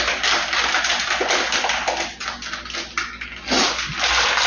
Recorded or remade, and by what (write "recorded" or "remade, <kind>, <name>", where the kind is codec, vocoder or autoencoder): recorded